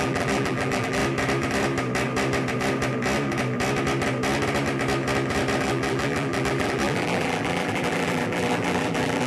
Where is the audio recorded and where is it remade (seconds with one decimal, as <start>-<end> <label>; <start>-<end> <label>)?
0.0-1.0 remade; 1.0-5.6 recorded; 5.6-9.3 remade